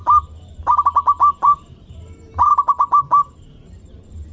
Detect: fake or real fake